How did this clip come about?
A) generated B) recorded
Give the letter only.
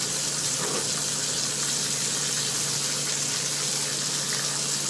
B